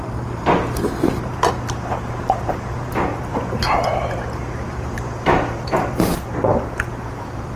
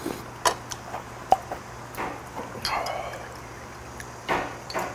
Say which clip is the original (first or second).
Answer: second